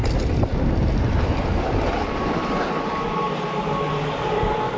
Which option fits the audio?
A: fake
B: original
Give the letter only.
B